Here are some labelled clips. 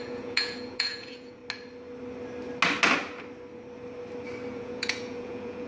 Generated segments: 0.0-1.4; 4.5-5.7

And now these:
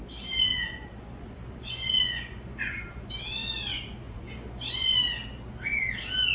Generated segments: 0.5-3.1; 3.7-5.0

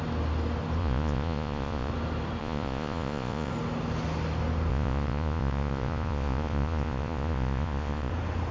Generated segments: 0.8-1.9; 2.4-3.5; 4.7-8.1

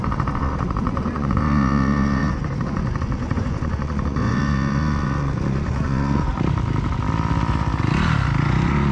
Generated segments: 0.0-6.3; 8.4-8.9

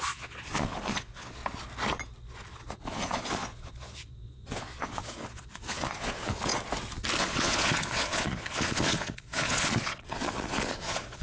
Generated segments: 0.0-1.4; 2.5-6.5; 7.2-11.2

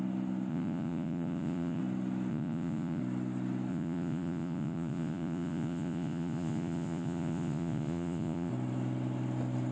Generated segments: 0.5-1.8; 2.3-3.0; 3.7-8.5

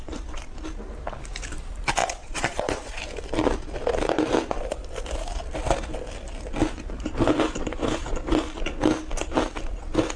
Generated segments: 2.0-3.0

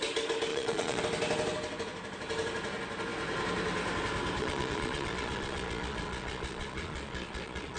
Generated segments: 0.5-1.0; 4.4-7.8